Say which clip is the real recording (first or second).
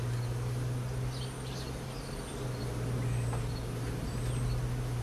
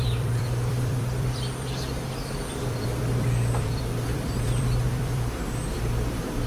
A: first